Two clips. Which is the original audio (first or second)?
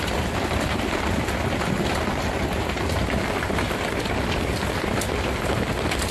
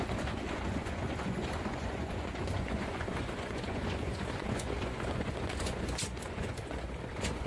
first